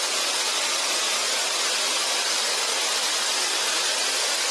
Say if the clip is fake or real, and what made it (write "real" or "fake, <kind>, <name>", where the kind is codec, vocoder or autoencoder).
real